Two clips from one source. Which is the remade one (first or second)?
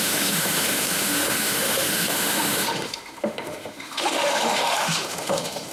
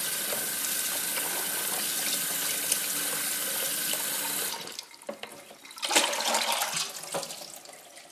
first